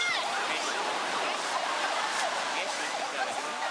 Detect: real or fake real